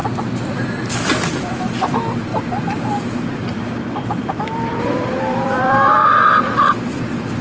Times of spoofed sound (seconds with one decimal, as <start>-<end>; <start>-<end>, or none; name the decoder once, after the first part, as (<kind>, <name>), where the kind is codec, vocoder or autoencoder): 0.0-2.3 (vocoder, BigVGAN v2); 2.9-6.0; 6.6-7.4